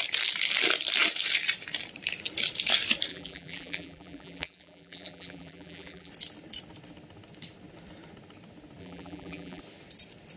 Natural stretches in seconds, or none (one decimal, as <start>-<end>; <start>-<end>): 0.0-3.1; 6.1-8.8; 9.6-10.4